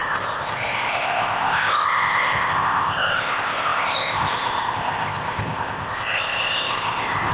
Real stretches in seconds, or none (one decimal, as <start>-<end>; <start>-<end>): none